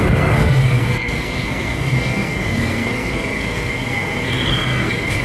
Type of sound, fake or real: fake